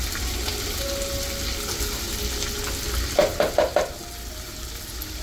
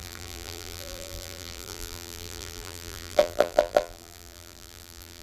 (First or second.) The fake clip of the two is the second